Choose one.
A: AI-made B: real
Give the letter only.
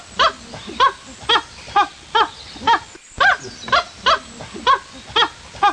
B